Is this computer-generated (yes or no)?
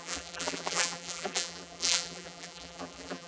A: yes